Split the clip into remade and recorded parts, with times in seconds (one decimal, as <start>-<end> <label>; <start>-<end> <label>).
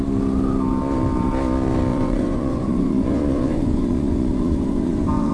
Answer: 0.0-1.9 recorded; 1.9-5.3 remade